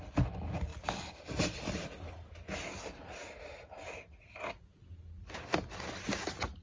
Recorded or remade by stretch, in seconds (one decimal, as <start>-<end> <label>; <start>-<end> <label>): 0.0-6.6 recorded